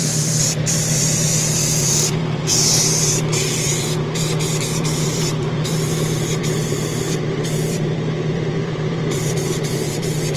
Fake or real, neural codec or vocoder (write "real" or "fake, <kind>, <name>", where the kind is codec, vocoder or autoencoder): fake, vocoder, BigVGAN v2